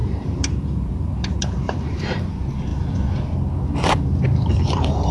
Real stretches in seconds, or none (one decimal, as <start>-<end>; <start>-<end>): 2.2-5.1